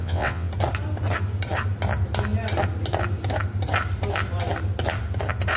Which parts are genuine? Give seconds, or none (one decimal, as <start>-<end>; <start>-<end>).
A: 0.5-5.6